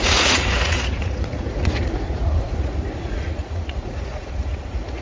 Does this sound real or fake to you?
fake